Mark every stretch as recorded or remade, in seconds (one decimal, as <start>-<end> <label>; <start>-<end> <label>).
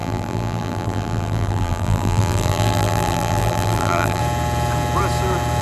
0.0-4.2 remade; 4.2-5.6 recorded